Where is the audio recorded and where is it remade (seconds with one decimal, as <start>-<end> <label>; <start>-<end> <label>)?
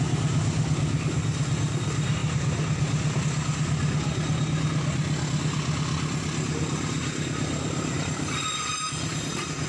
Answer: 0.0-9.7 recorded